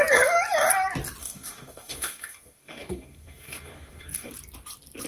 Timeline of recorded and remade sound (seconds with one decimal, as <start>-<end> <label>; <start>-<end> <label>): 0.0-1.2 recorded; 1.2-4.3 remade; 4.3-5.1 recorded